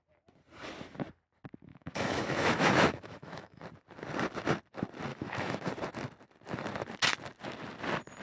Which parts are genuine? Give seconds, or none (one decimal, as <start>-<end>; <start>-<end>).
0.0-1.7; 3.6-5.1; 5.7-8.2